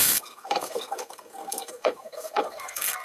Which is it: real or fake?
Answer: fake